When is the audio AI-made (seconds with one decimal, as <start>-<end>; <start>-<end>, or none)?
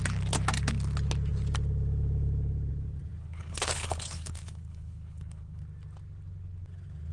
3.2-5.6